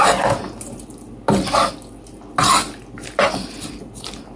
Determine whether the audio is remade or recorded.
recorded